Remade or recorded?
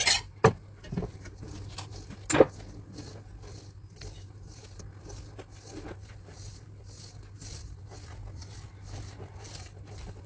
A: recorded